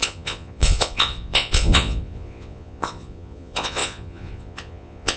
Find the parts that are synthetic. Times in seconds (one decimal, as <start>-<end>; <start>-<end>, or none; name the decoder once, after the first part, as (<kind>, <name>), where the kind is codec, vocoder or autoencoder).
0.0-5.2 (vocoder, Vocos)